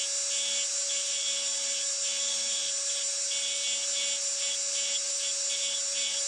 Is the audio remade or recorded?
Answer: recorded